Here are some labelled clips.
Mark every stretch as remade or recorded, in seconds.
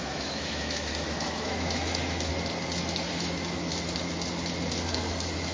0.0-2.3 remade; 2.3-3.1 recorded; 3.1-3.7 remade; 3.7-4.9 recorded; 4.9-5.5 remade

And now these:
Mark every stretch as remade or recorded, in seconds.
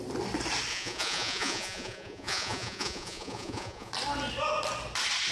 0.0-0.7 recorded; 0.7-3.9 remade; 3.9-5.3 recorded